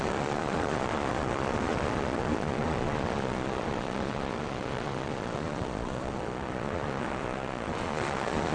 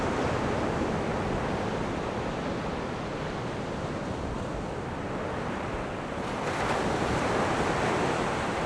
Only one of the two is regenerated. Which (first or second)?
first